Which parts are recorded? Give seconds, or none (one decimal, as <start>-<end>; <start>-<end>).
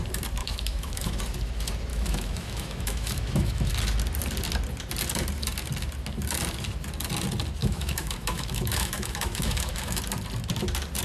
0.0-0.4; 1.2-1.9; 3.7-7.6; 10.0-11.0